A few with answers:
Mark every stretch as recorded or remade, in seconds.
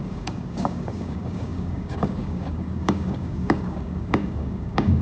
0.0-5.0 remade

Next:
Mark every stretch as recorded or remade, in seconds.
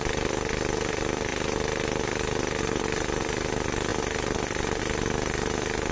0.0-5.9 recorded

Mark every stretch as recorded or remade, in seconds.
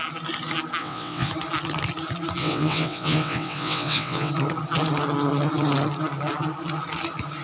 0.0-0.8 recorded; 0.8-1.3 remade; 1.3-2.4 recorded; 2.4-4.3 remade; 4.3-7.4 recorded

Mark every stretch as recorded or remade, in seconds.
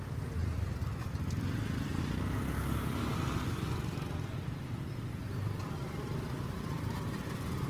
0.0-7.7 recorded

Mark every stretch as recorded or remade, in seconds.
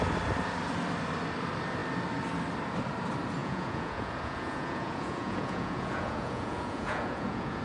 0.0-3.4 recorded; 3.4-7.6 remade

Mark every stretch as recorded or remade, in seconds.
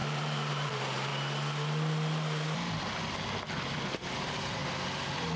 0.0-1.1 remade; 1.1-3.9 recorded; 3.9-4.6 remade; 4.6-5.4 recorded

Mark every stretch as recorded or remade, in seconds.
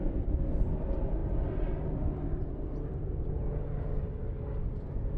0.0-5.2 recorded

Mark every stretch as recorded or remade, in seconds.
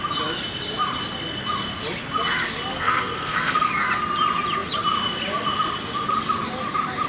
0.0-2.7 recorded; 2.7-3.7 remade; 3.7-7.1 recorded